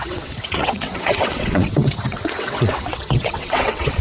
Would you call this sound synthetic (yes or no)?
yes